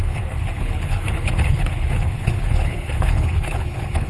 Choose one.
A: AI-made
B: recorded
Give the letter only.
A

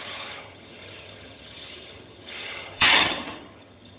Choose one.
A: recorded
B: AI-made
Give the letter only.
B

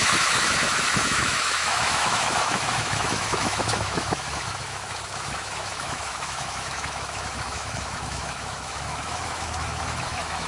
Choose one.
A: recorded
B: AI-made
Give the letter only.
B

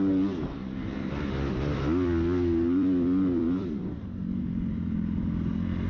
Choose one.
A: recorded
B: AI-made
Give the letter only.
B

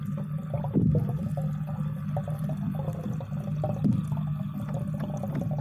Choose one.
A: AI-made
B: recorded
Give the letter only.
B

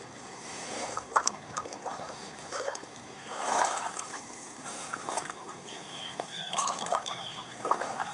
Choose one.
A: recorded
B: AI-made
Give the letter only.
B